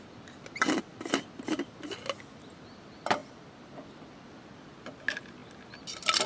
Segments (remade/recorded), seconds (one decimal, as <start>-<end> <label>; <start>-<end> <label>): 0.0-6.3 recorded